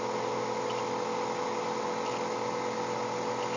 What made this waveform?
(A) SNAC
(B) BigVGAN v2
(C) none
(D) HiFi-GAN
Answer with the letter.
C